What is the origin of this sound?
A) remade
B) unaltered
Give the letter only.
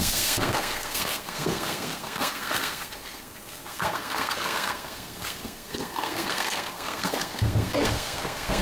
A